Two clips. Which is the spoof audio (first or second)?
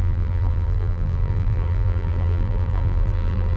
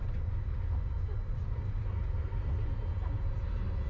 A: first